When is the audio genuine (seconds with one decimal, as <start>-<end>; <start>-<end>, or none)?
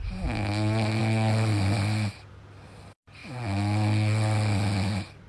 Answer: 0.0-5.3